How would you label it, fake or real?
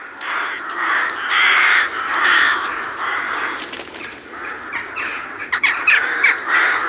fake